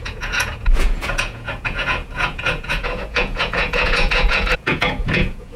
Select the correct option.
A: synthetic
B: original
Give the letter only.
A